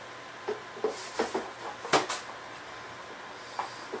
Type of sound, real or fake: real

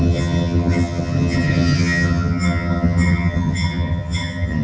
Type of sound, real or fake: fake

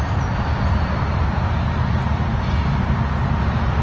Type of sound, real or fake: real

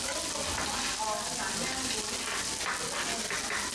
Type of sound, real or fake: real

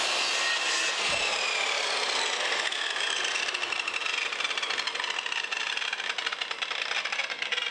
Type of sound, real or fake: real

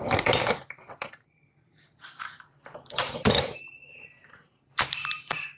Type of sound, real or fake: fake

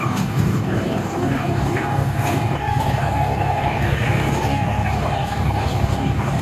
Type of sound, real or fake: fake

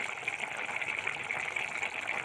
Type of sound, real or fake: real